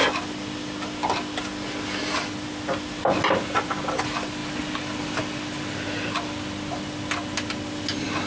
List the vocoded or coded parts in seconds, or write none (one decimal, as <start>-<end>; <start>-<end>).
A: none